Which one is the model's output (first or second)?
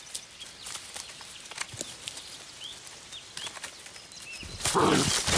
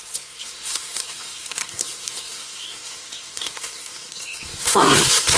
second